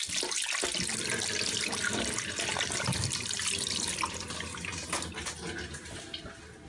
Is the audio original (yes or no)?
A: yes